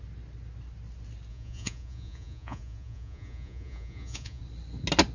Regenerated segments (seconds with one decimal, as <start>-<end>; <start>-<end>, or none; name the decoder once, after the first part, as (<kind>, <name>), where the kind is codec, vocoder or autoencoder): 1.3-4.4 (vocoder, Vocos)